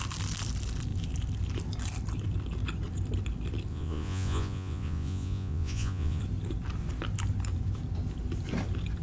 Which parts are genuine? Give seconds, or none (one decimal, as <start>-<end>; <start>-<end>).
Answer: 0.0-3.7; 6.2-9.0